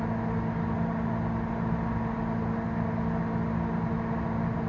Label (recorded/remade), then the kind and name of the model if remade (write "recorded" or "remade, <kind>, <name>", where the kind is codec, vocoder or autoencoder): recorded